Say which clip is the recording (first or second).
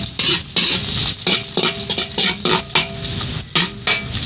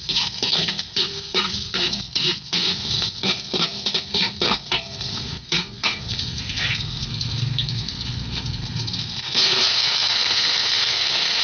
first